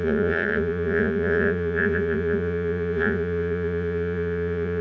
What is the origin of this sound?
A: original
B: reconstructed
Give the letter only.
B